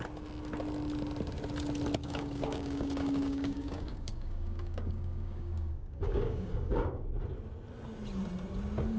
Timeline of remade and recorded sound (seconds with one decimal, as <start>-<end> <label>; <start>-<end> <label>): 0.0-2.0 recorded; 2.0-7.1 remade; 7.1-9.0 recorded